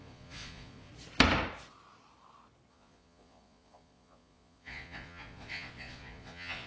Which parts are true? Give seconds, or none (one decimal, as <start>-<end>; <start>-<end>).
0.9-2.7